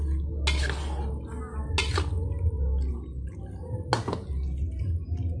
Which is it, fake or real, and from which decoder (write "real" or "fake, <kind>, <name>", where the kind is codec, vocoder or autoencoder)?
real